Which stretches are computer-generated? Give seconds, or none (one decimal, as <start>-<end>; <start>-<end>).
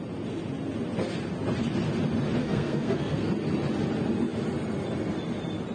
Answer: 2.4-3.3